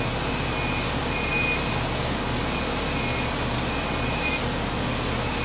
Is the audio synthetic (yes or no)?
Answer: no